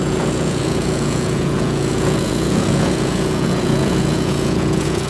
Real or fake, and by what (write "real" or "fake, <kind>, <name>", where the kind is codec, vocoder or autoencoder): fake, vocoder, Vocos